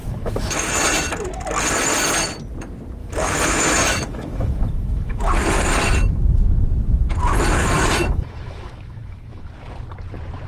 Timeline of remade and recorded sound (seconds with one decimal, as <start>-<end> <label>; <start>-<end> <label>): 0.0-0.7 remade; 0.7-3.0 recorded; 3.0-5.3 remade; 5.3-7.6 recorded; 7.6-9.5 remade; 9.5-10.5 recorded